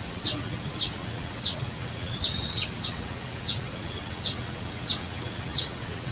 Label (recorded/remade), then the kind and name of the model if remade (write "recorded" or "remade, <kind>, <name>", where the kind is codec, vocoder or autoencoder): remade, vocoder, WaveNeXt